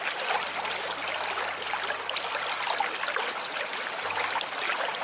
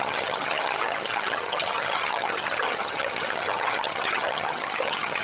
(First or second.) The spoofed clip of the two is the second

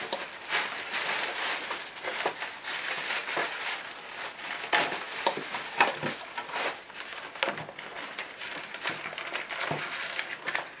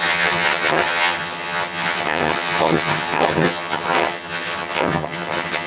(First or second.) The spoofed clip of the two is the second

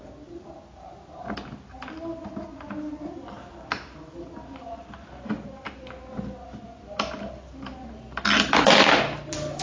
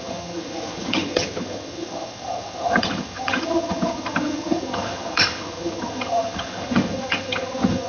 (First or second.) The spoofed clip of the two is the second